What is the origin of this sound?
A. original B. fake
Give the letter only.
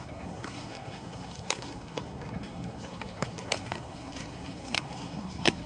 B